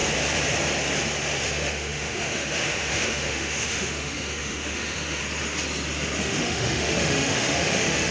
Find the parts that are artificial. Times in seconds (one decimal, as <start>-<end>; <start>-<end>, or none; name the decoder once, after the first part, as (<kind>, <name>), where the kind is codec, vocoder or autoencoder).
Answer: 1.4-5.2 (autoencoder, DAC-VAE); 6.2-8.1